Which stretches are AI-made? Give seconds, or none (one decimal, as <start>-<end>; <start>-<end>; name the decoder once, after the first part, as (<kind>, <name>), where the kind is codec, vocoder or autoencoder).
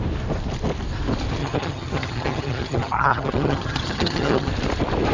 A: 1.4-4.5 (vocoder, HiFi-GAN)